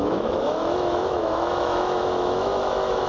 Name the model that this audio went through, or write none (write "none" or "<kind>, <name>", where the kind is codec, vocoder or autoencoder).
autoencoder, DAC-VAE